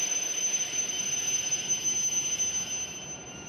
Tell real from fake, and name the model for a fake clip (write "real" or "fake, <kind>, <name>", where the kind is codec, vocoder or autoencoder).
real